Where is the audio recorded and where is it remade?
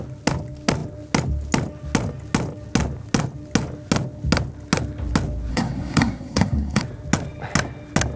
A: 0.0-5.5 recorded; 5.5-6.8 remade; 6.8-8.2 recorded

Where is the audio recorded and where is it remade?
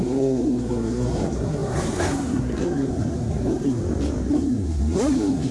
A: 0.0-3.8 remade; 3.8-4.3 recorded; 4.3-5.5 remade